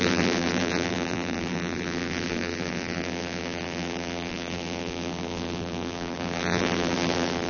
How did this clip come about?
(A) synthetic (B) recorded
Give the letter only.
A